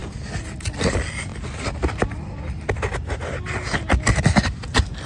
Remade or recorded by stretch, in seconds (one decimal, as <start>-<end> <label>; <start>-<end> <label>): 0.0-5.1 recorded